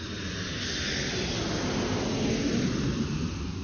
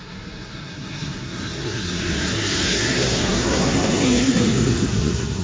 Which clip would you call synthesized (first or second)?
second